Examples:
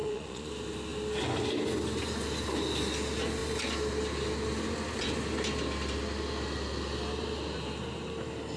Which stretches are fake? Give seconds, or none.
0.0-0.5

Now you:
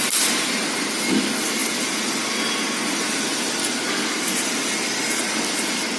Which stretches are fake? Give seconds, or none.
none

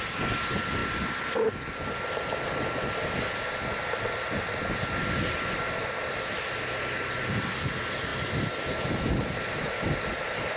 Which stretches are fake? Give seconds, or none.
none

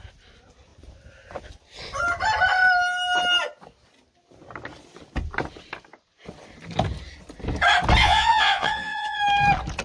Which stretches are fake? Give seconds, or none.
8.0-9.2

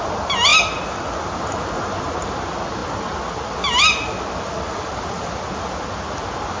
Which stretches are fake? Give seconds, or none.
none